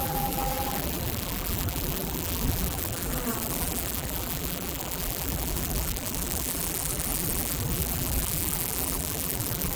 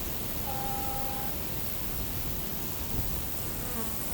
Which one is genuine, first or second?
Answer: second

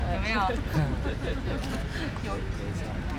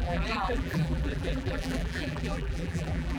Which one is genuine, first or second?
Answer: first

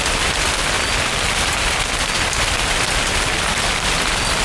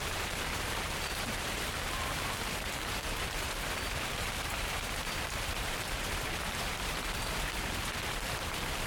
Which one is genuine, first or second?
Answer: first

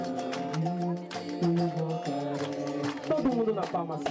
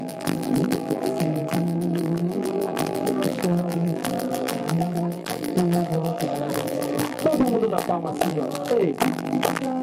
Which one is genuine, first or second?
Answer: first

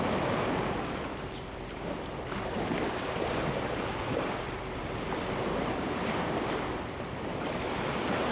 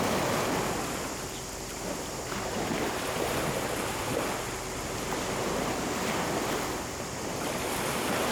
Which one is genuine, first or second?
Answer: second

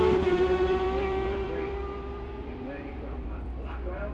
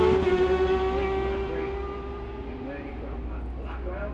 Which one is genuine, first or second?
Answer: second